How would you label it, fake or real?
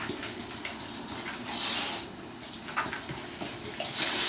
real